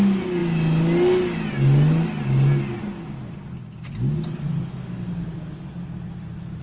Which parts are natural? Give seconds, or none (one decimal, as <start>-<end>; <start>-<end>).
0.0-6.6